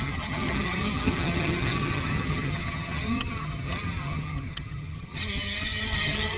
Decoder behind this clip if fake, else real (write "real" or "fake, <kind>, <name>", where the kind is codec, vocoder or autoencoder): fake, vocoder, HiFi-GAN